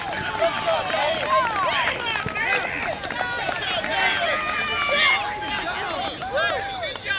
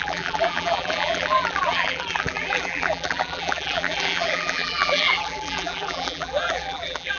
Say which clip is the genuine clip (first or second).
first